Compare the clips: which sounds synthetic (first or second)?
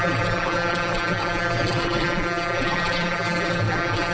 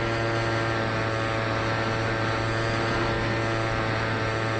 first